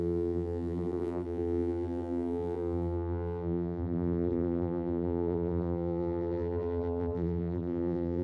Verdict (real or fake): fake